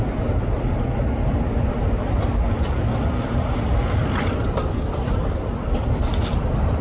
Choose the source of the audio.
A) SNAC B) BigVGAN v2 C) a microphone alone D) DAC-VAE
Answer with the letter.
C